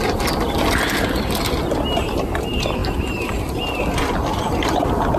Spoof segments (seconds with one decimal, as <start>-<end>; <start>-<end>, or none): none